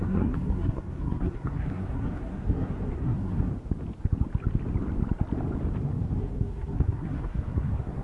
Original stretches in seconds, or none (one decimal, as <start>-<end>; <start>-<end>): 3.5-6.2